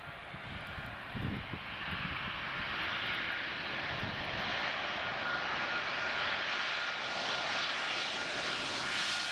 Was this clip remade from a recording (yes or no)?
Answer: no